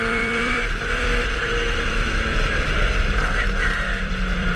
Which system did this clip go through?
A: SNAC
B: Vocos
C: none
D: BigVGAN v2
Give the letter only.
D